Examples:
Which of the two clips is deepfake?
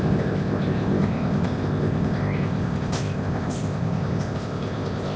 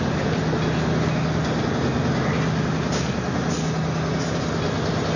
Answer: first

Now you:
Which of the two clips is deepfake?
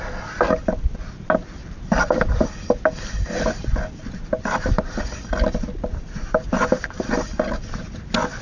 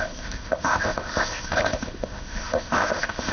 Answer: second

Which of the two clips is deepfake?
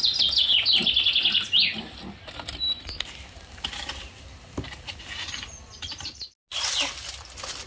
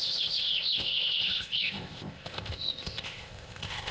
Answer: second